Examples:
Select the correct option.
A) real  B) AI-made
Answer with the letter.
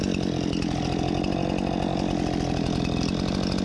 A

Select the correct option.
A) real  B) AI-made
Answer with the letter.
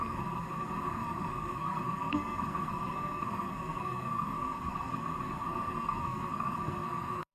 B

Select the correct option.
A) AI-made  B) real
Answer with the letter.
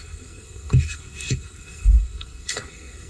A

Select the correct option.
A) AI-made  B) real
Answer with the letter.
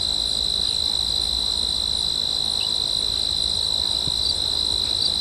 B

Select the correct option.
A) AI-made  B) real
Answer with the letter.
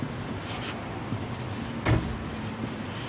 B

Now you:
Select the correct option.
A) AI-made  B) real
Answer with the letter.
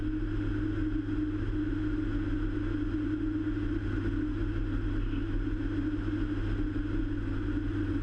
B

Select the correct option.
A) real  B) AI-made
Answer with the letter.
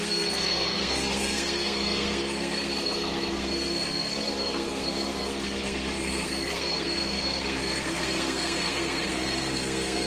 B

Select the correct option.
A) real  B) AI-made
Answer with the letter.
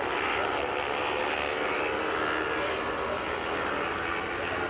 A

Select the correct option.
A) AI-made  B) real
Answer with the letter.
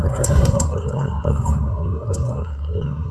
A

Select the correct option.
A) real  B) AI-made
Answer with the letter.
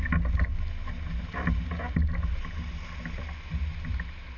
A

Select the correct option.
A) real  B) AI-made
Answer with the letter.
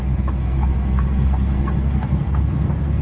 B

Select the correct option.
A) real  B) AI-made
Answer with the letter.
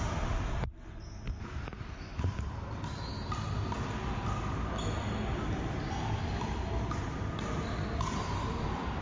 A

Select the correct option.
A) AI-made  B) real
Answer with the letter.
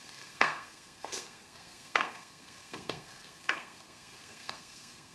A